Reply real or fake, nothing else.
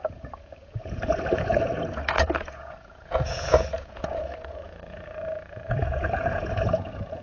fake